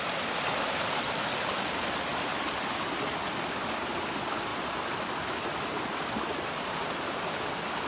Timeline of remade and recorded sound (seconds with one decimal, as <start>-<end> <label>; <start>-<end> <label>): 0.0-7.9 recorded